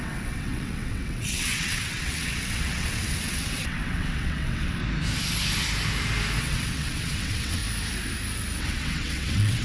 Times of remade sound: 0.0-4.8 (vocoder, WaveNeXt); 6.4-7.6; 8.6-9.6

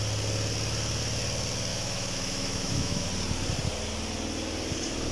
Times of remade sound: 1.7-3.1 (autoencoder, DAC-VAE)

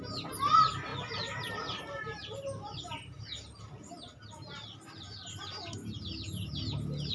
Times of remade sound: none

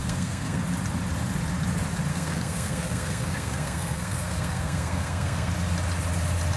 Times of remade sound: 0.0-0.6 (codec, SNAC); 2.1-5.5

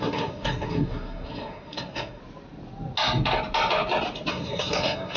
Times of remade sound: 0.0-2.2 (codec, SNAC); 4.3-5.2

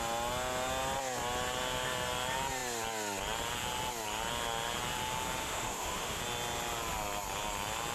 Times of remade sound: 5.4-6.2 (autoencoder, DAC-VAE)